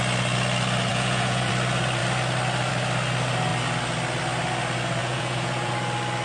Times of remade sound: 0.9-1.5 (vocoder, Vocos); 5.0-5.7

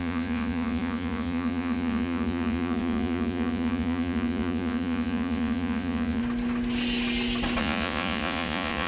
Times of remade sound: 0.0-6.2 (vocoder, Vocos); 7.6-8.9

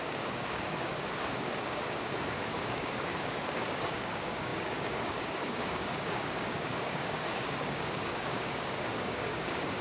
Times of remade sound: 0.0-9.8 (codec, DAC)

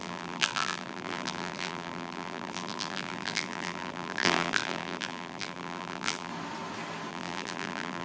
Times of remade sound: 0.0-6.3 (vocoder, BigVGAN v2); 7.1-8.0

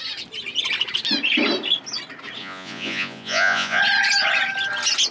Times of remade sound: 2.4-3.8 (vocoder, Vocos)